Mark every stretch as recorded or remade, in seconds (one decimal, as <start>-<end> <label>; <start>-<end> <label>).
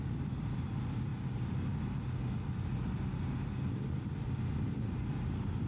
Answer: 0.0-1.1 remade; 1.1-4.5 recorded; 4.5-5.7 remade